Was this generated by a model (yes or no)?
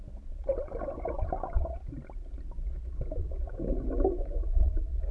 no